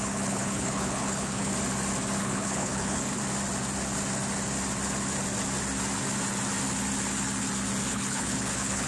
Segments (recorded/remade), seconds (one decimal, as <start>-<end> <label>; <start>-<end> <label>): 0.0-1.5 remade; 1.5-2.2 recorded; 2.2-3.2 remade; 3.2-7.9 recorded; 7.9-8.9 remade